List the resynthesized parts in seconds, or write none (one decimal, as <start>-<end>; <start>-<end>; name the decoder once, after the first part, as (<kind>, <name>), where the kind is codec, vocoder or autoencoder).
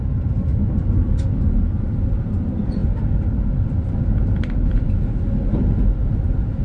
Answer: 0.0-0.5 (vocoder, BigVGAN v2); 2.1-2.8; 6.0-6.6